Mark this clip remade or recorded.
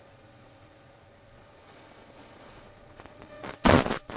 remade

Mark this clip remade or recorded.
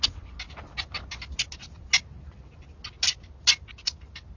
recorded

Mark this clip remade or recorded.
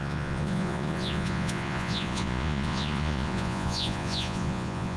remade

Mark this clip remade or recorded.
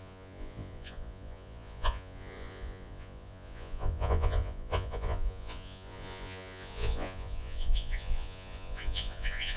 remade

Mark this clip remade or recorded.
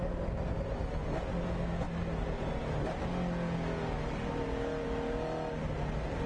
recorded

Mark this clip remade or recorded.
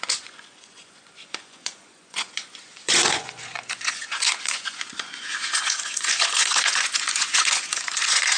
remade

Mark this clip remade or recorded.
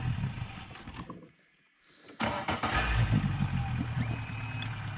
recorded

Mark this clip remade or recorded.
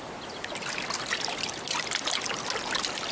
recorded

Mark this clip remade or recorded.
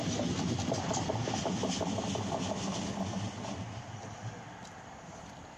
recorded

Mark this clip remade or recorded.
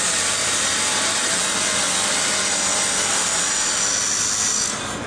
recorded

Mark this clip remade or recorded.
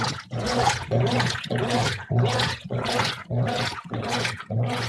remade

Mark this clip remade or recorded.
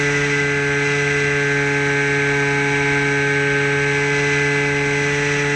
recorded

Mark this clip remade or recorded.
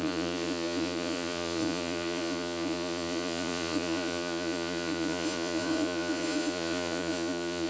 remade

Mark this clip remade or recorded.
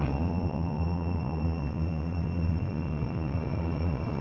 remade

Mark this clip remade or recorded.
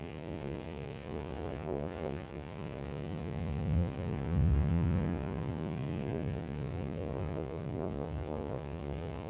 remade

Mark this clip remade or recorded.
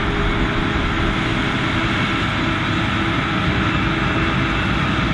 recorded